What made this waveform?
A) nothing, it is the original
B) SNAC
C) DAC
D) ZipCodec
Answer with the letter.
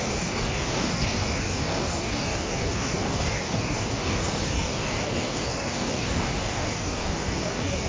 C